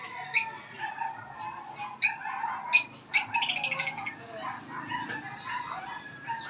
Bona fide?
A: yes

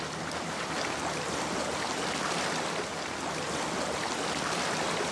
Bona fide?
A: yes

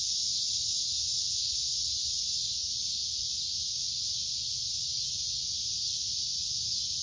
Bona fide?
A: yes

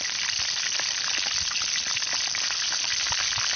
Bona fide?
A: yes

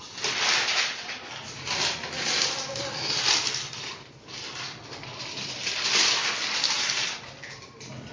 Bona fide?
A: yes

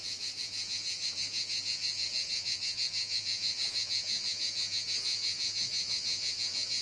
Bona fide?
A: no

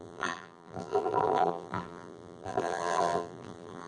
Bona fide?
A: no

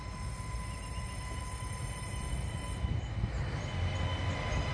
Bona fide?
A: yes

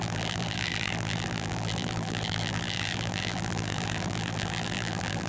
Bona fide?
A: no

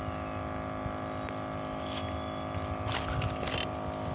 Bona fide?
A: yes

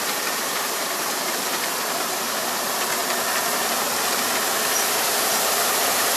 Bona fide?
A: no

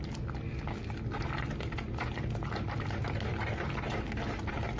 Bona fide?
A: yes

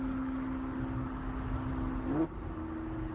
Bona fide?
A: yes